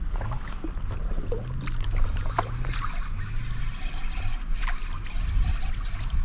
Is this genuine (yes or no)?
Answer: yes